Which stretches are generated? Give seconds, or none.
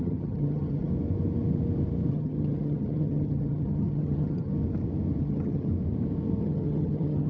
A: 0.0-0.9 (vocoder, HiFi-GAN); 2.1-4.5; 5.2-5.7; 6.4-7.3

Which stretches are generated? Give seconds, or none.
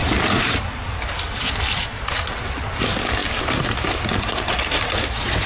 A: none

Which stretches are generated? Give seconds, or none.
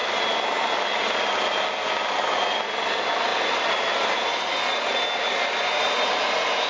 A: none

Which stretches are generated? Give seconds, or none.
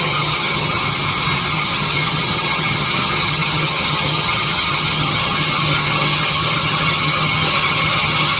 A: 0.0-0.8 (vocoder, HiFi-GAN); 1.5-8.4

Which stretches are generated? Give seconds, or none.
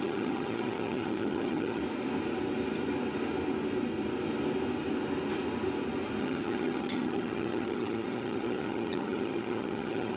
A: 0.0-1.8 (vocoder, HiFi-GAN); 6.2-10.2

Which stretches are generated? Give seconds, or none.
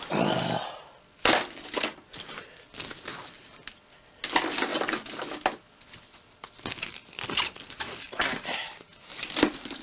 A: none